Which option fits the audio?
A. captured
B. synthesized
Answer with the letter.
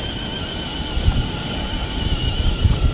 A